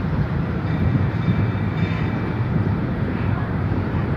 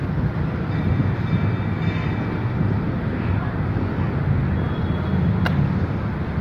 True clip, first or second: second